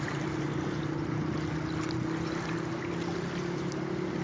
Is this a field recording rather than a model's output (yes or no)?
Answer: yes